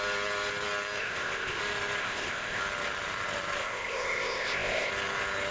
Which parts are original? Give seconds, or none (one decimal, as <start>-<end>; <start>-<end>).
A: 0.0-1.0; 1.6-2.0; 2.6-3.6; 4.9-5.5